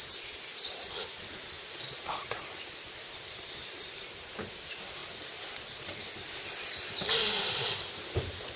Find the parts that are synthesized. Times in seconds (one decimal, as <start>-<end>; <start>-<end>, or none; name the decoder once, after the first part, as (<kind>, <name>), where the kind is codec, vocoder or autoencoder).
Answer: 0.0-5.0 (vocoder, BigVGAN v2); 7.3-8.6